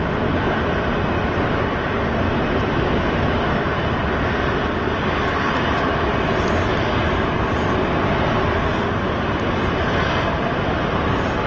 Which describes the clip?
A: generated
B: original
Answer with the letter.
B